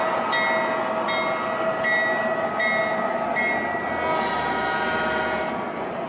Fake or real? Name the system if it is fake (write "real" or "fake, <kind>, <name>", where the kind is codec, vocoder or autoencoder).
real